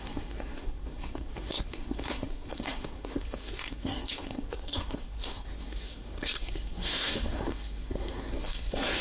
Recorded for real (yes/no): no